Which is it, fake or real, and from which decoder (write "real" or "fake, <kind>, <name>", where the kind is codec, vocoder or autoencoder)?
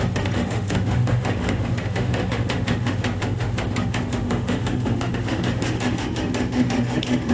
fake, autoencoder, DAC-VAE